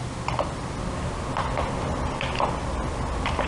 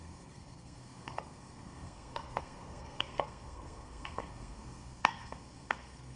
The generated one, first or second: second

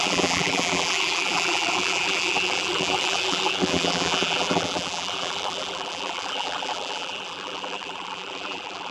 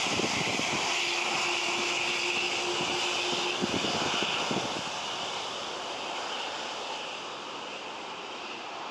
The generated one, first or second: first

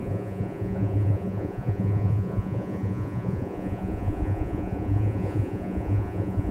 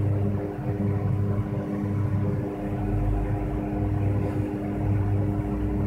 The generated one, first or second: first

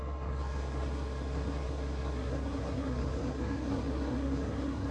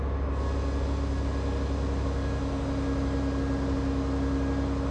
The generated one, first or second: first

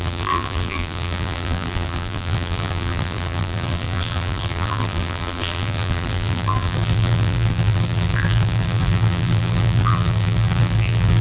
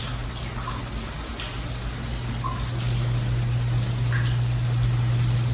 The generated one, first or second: first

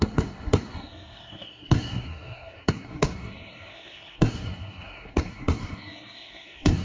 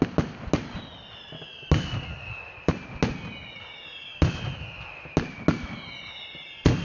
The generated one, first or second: first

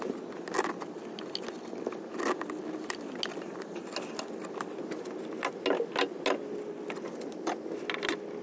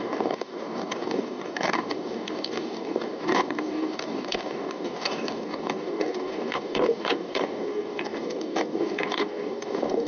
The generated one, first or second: second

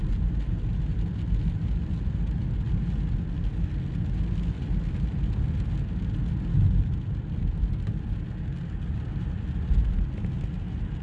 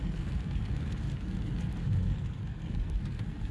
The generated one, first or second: second